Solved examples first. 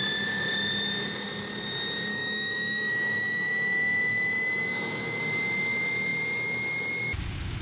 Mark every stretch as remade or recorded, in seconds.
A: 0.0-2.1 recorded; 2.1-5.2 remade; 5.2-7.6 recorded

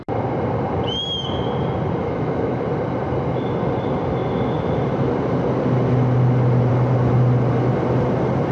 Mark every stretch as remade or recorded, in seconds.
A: 0.0-2.0 recorded; 2.0-2.6 remade; 2.6-8.5 recorded